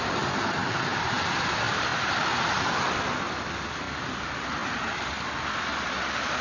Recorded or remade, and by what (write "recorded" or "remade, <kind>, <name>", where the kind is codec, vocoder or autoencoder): recorded